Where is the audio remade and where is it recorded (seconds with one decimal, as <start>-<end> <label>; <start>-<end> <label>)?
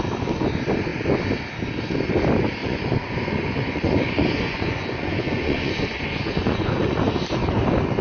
0.0-2.6 recorded; 2.6-7.1 remade; 7.1-8.0 recorded